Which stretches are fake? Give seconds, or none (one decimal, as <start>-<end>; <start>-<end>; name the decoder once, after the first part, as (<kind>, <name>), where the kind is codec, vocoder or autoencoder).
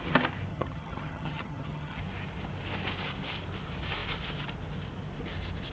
0.5-2.0 (vocoder, HiFi-GAN)